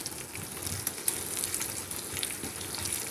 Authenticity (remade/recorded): recorded